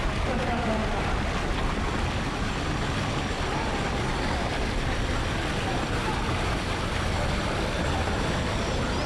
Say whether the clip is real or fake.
real